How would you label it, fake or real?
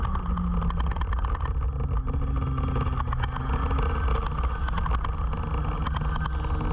real